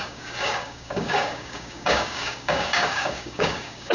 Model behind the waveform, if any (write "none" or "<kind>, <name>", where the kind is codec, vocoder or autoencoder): codec, DAC